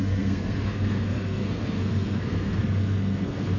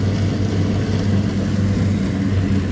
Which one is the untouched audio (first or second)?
second